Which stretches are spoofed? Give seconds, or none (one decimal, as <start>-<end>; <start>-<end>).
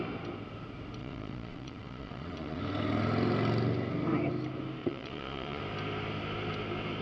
1.0-2.6; 4.8-5.6